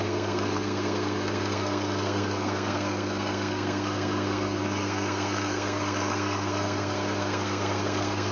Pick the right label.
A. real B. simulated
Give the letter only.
B